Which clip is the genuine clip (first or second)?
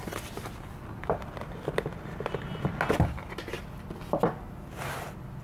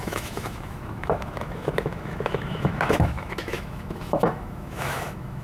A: first